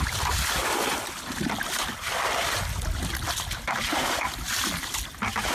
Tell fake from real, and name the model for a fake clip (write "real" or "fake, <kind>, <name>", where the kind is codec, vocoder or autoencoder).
real